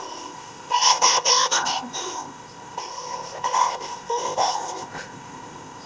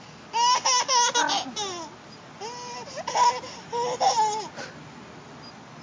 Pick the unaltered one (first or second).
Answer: second